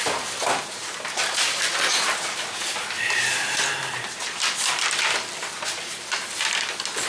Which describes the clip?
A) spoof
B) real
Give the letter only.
B